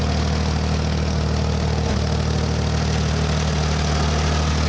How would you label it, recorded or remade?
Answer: recorded